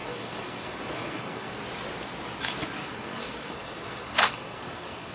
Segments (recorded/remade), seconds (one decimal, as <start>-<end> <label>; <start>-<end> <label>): 0.0-1.6 remade; 1.6-2.8 recorded; 2.8-5.1 remade